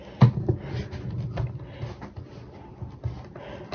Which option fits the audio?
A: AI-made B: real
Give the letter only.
B